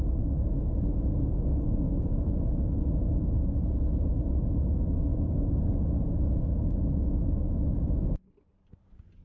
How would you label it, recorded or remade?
recorded